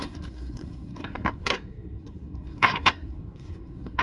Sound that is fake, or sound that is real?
fake